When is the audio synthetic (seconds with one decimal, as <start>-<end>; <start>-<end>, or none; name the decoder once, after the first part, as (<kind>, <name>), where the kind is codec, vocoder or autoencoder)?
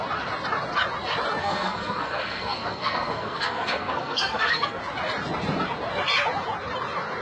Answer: 1.4-4.8 (codec, SNAC)